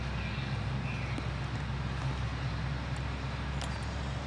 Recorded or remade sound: recorded